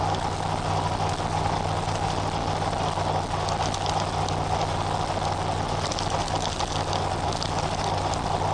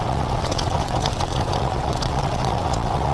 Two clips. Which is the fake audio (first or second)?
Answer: second